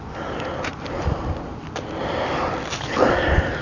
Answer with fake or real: real